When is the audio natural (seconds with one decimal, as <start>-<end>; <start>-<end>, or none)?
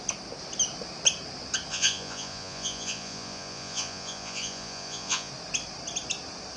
0.0-1.7; 5.3-6.6